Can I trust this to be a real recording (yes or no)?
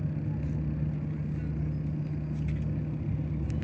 yes